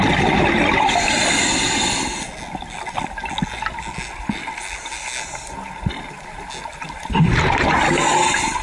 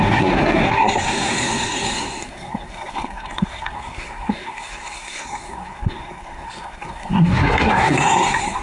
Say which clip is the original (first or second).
first